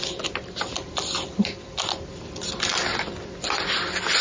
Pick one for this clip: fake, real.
real